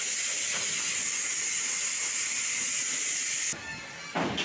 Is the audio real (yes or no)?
yes